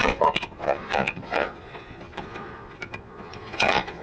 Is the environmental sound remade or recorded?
remade